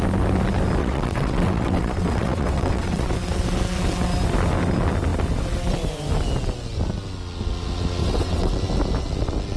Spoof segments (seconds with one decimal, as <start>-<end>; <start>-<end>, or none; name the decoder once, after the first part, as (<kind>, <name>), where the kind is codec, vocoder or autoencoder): 0.8-3.1 (vocoder, WaveNeXt); 8.0-8.5

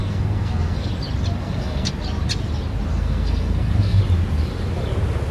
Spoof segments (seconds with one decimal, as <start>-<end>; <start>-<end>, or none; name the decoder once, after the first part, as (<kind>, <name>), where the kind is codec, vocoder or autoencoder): 0.0-0.9 (codec, SNAC); 1.4-1.9; 2.9-4.0

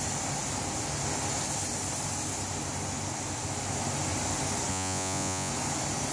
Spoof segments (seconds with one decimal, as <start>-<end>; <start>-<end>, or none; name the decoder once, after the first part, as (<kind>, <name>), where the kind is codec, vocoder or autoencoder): 4.7-5.5 (vocoder, Vocos)

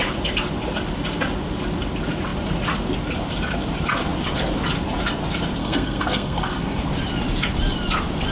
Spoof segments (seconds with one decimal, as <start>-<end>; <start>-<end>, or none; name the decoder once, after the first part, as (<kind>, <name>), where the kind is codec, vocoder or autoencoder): 5.6-6.8 (codec, SNAC)